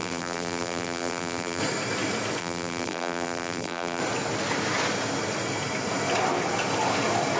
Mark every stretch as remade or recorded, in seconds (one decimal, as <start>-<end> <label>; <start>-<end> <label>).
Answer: 0.0-1.6 remade; 1.6-2.4 recorded; 2.4-4.0 remade; 4.0-7.4 recorded